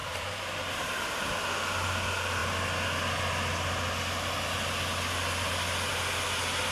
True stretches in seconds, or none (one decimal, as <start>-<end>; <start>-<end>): 1.3-6.7